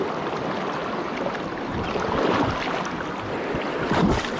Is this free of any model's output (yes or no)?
yes